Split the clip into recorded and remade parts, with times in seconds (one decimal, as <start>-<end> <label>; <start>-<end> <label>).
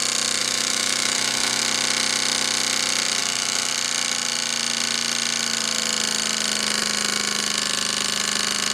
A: 0.0-0.4 recorded; 0.4-1.6 remade; 1.6-3.2 recorded; 3.2-3.7 remade; 3.7-8.7 recorded